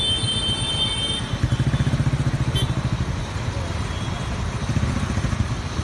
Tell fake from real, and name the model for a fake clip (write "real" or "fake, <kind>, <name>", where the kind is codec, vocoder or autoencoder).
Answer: real